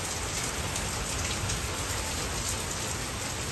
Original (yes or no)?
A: yes